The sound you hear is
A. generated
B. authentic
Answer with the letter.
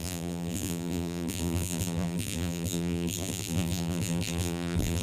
A